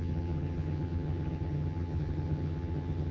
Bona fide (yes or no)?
no